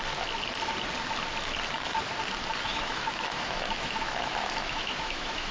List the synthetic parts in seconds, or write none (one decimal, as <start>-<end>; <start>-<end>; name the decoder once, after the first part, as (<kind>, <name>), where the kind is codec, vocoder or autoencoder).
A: 2.7-5.5 (autoencoder, DAC-VAE)